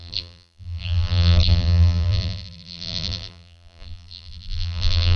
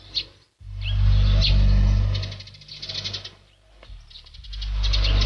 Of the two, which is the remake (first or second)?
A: first